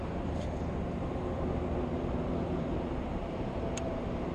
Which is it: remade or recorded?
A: remade